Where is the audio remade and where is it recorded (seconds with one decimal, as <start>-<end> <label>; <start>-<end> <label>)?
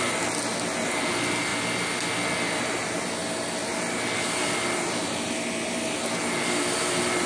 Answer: 0.0-7.3 recorded